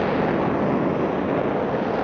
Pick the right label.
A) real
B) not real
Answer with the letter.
A